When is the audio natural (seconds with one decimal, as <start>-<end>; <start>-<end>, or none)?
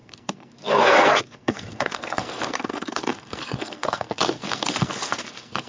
none